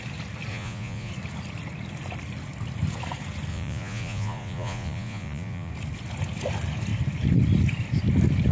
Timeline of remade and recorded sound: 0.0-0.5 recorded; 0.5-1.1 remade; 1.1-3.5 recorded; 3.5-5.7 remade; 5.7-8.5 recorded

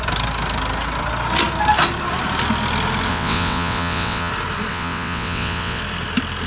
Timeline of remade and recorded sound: 0.0-3.1 recorded; 3.1-4.3 remade; 4.3-4.7 recorded; 4.7-5.8 remade; 5.8-6.5 recorded

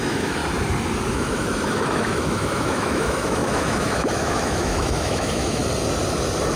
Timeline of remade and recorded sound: 0.0-0.4 remade; 0.4-1.1 recorded; 1.1-5.6 remade; 5.6-6.6 recorded

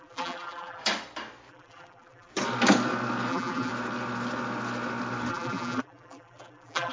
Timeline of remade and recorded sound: 0.0-0.8 remade; 0.8-1.5 recorded; 1.5-2.3 remade; 2.3-3.3 recorded; 3.3-3.7 remade; 3.7-5.3 recorded; 5.3-6.9 remade

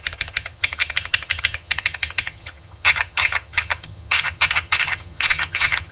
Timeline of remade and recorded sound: 0.0-5.9 remade